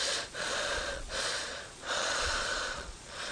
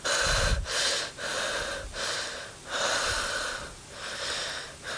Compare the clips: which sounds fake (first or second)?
first